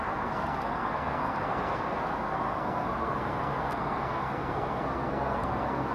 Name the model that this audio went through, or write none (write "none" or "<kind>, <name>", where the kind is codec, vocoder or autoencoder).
codec, SNAC